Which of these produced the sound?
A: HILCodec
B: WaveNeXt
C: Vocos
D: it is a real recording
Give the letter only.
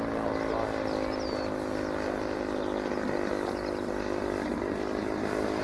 D